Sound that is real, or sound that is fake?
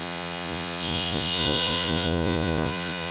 fake